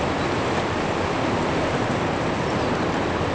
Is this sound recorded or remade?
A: recorded